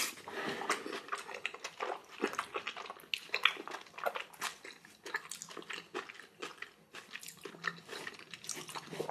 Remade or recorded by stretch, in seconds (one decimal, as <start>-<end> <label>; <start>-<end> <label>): 0.0-9.1 recorded